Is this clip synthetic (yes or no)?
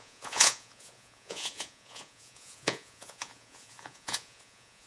yes